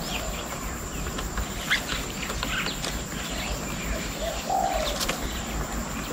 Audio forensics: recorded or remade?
remade